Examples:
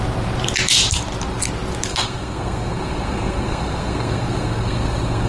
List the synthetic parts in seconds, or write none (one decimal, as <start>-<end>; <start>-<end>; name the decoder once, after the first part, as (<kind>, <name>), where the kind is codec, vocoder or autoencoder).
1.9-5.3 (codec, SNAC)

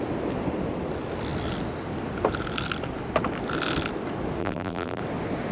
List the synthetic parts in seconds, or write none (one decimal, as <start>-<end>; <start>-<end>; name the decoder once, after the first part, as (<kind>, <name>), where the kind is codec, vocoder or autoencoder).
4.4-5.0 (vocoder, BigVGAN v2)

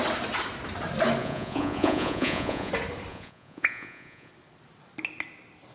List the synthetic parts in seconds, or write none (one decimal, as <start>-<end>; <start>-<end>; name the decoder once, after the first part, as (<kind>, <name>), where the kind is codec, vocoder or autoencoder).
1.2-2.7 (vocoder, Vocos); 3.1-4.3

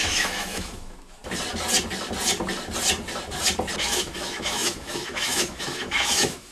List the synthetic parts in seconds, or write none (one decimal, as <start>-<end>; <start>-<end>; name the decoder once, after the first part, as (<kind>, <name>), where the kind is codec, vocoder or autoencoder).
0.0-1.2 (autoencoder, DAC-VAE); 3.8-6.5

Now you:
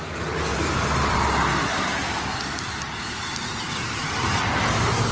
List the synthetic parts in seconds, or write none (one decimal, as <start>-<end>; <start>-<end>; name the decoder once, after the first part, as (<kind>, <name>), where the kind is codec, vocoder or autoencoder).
0.5-1.1 (vocoder, BigVGAN v2); 1.5-4.6

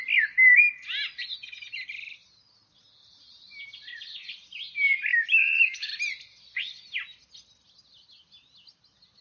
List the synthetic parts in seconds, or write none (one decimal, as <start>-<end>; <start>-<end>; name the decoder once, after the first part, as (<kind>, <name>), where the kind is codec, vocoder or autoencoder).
5.1-5.9 (autoencoder, DAC-VAE)

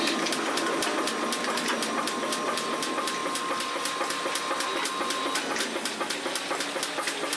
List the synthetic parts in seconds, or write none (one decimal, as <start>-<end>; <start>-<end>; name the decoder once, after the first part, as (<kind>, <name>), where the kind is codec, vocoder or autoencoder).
none